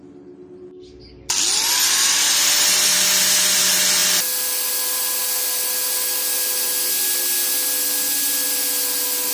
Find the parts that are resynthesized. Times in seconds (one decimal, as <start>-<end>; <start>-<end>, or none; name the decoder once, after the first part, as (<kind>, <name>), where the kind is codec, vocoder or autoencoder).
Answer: none